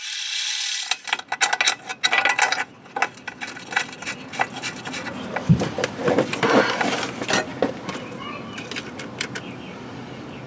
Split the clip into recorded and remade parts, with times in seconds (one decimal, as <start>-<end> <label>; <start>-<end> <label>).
0.0-10.5 recorded